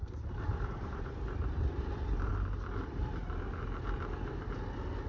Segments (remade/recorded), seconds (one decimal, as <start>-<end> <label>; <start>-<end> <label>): 0.0-2.3 remade; 2.3-5.1 recorded